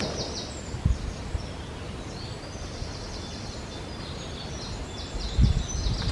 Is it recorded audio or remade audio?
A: recorded